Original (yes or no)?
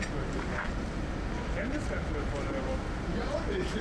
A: yes